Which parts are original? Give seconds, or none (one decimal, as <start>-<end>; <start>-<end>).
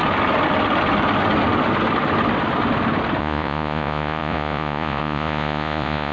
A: 0.0-3.2